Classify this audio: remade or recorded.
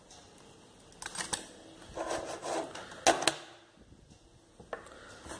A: recorded